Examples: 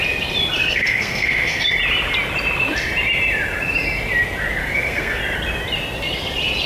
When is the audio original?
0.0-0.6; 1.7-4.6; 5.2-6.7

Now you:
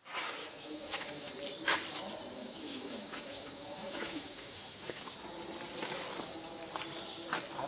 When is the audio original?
0.0-0.4; 1.3-2.4; 5.1-7.7

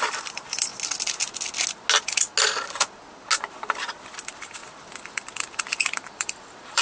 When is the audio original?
0.7-3.6

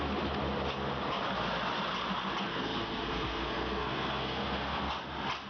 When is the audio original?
0.0-2.5; 5.0-5.5